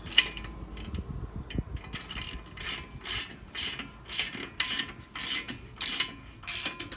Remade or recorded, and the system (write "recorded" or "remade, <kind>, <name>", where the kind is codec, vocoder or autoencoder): recorded